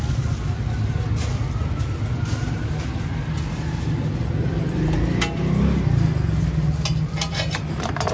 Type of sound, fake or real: real